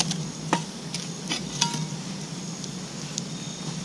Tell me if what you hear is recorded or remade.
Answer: recorded